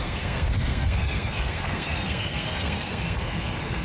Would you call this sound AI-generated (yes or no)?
yes